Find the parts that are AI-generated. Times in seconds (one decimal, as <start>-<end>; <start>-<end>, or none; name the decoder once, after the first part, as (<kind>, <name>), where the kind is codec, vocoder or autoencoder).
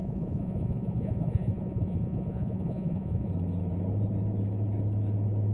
0.0-3.3 (vocoder, Vocos)